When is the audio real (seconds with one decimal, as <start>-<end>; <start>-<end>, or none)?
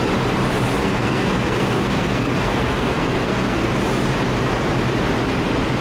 0.0-0.8; 3.7-5.8